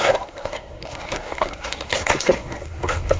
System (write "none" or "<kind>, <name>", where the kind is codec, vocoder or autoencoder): codec, SNAC